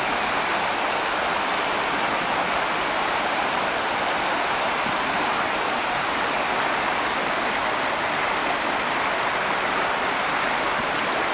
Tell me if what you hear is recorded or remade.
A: recorded